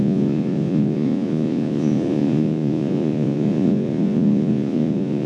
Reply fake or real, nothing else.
fake